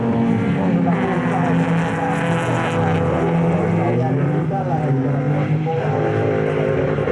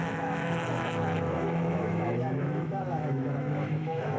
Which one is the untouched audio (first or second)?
first